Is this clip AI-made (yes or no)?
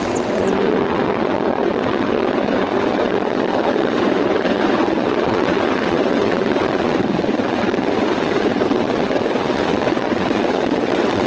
yes